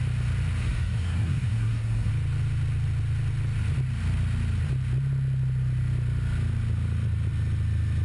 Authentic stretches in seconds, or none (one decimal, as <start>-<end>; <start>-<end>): 0.0-0.6; 2.1-8.0